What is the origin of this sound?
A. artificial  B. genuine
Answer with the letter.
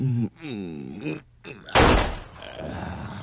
A